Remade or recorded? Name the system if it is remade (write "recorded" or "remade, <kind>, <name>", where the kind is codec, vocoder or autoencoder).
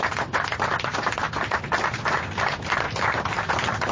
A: recorded